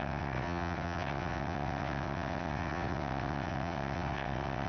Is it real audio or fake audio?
fake